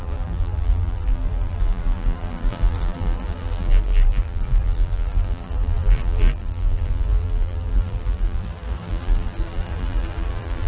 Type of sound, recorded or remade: remade